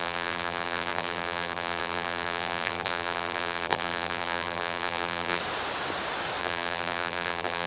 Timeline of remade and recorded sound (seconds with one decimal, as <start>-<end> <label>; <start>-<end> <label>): 0.0-5.4 remade; 5.4-6.4 recorded; 6.4-7.7 remade